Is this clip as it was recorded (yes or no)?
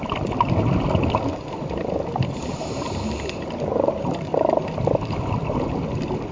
yes